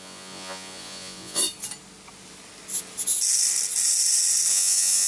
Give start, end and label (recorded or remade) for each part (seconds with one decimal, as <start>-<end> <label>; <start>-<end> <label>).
0.0-1.4 remade; 1.4-4.5 recorded; 4.5-5.1 remade